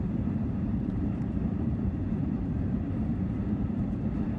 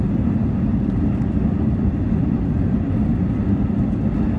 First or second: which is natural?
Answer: second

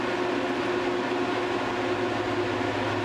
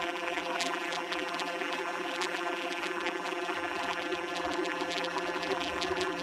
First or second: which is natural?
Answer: first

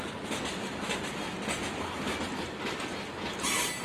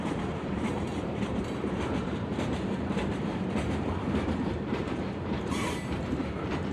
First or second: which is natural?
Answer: first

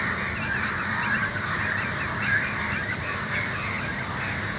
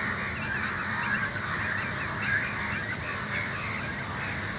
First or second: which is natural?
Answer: second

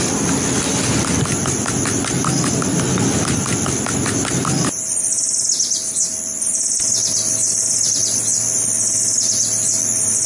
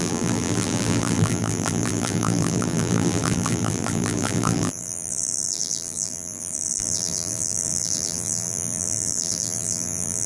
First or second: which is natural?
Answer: first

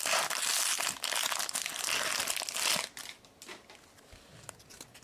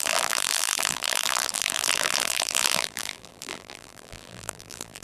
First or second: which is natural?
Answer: first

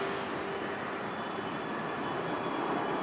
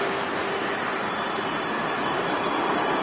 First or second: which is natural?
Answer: first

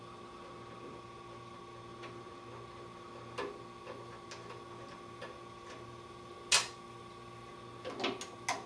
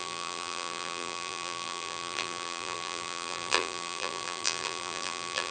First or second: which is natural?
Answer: first